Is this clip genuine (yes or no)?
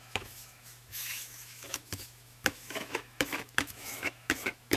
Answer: no